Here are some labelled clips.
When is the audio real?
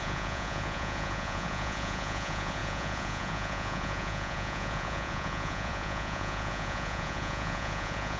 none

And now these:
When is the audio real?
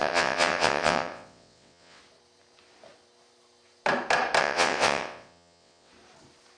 2.0-4.4; 5.9-6.6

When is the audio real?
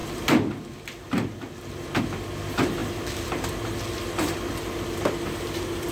0.0-5.9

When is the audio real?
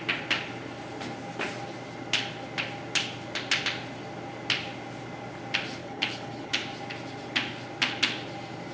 0.0-5.8; 6.5-8.7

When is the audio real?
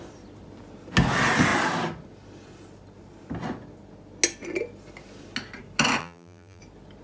0.0-6.0; 6.6-7.0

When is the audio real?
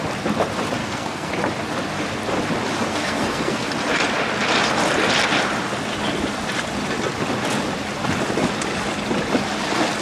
0.0-0.8; 1.3-2.9; 3.7-10.0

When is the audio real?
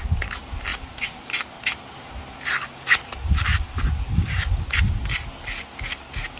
0.0-6.4